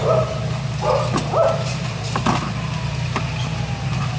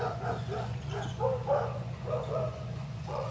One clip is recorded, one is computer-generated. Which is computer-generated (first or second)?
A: second